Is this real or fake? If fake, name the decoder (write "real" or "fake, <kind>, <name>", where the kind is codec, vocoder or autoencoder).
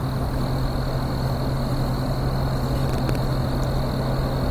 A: real